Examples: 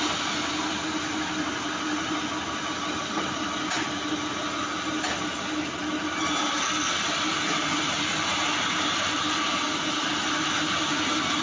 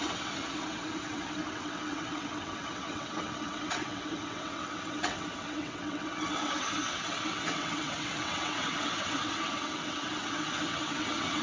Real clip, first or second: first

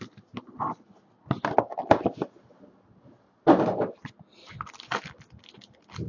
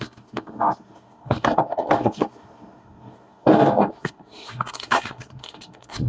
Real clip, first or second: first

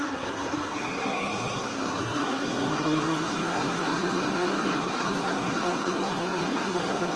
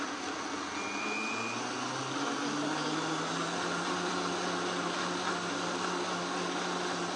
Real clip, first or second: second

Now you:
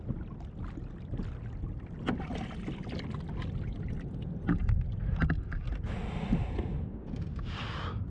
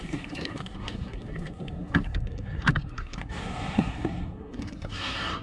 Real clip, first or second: first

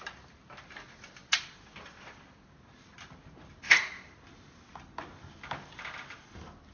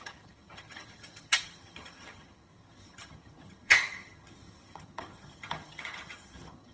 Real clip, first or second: first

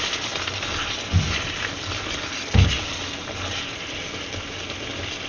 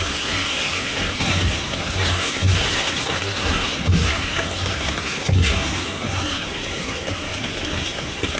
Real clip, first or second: first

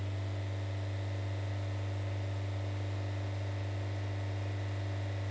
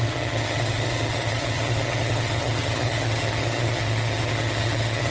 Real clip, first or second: first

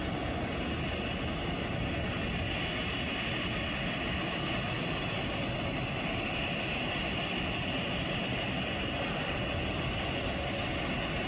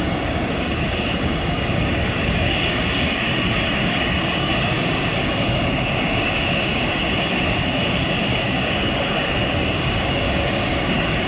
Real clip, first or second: first